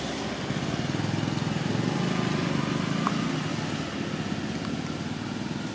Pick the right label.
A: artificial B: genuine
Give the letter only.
B